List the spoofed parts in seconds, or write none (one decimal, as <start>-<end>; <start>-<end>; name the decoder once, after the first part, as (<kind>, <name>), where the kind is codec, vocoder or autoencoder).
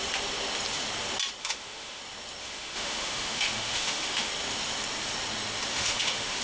1.4-2.0 (autoencoder, DAC-VAE); 2.4-4.3; 5.7-6.4